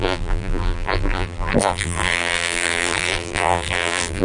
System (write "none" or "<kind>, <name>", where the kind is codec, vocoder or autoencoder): vocoder, BigVGAN v2